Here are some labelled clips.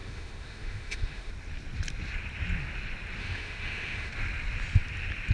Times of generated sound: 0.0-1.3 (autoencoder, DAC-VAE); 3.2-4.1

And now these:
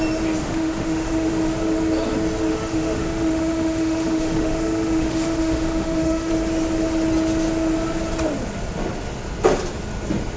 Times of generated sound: 0.4-1.3 (autoencoder, DAC-VAE); 2.5-6.3

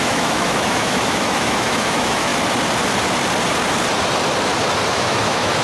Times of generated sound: 0.0-2.3 (autoencoder, DAC-VAE); 4.9-5.6

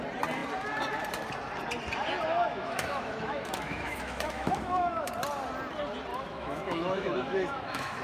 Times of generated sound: 2.5-5.1 (autoencoder, DAC-VAE); 6.1-8.0